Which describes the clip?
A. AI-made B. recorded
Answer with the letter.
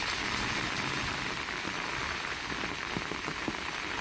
B